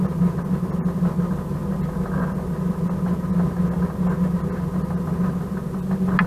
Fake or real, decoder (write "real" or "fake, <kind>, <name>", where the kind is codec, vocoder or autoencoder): real